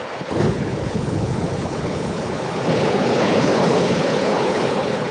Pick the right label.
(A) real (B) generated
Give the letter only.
B